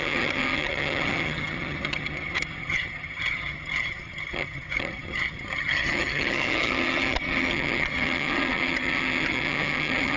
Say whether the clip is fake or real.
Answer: fake